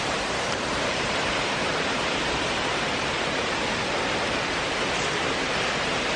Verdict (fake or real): fake